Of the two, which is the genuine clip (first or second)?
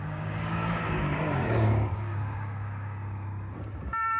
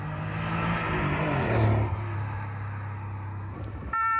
second